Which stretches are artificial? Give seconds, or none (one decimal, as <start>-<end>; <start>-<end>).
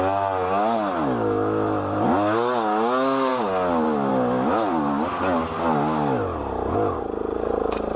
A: none